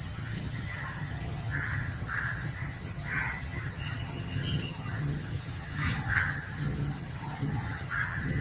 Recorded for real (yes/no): no